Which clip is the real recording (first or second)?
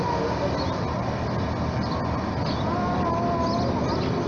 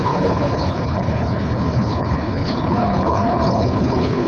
first